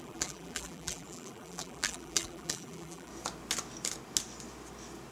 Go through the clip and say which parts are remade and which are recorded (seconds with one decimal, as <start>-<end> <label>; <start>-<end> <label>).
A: 0.0-3.1 remade; 3.1-5.1 recorded

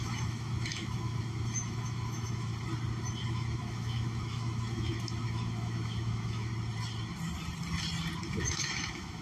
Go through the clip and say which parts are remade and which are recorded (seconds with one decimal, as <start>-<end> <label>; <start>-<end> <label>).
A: 0.0-2.5 remade; 2.5-3.3 recorded; 3.3-6.5 remade; 6.5-8.3 recorded; 8.3-9.2 remade

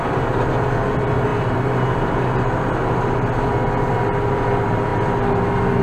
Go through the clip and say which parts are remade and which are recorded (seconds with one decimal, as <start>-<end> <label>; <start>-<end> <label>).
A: 0.0-5.8 recorded

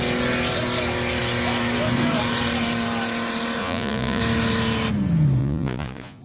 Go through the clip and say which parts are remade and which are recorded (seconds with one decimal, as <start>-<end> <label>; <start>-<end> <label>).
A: 0.0-3.6 recorded; 3.6-4.2 remade; 4.2-5.4 recorded; 5.4-6.2 remade

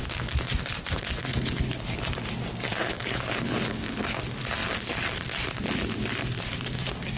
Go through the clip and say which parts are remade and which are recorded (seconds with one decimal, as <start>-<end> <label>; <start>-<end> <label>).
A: 0.0-1.3 recorded; 1.3-2.0 remade; 2.0-2.8 recorded; 2.8-3.8 remade; 3.8-7.2 recorded

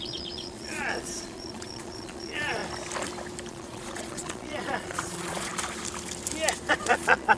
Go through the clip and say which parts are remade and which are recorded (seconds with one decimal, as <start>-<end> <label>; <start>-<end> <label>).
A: 0.0-2.6 remade; 2.6-3.5 recorded; 3.5-5.5 remade; 5.5-6.7 recorded; 6.7-7.4 remade

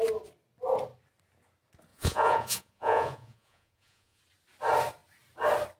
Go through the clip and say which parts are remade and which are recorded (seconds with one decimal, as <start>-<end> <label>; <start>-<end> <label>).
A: 0.0-1.9 recorded; 1.9-4.2 remade; 4.2-5.8 recorded